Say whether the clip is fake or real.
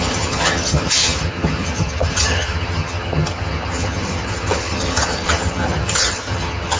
fake